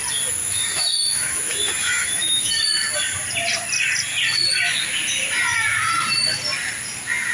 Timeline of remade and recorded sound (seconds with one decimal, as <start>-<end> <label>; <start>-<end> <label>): 0.0-0.4 recorded; 0.4-2.5 remade; 2.5-7.3 recorded